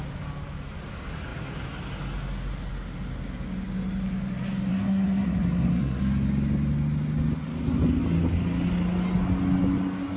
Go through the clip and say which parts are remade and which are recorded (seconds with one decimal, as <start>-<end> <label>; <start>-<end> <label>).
0.0-4.7 recorded; 4.7-6.0 remade; 6.0-10.2 recorded